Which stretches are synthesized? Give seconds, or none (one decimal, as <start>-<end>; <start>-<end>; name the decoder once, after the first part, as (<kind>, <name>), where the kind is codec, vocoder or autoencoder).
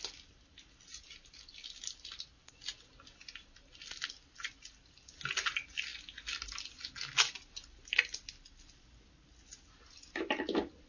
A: none